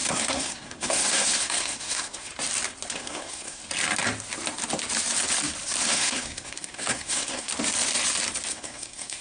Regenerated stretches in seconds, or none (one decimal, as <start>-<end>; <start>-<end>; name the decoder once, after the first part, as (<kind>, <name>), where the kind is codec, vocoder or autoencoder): 0.0-2.3 (codec, SNAC); 2.9-3.6; 5.8-7.5; 8.5-9.2